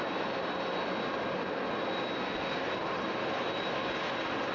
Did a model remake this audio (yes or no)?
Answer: no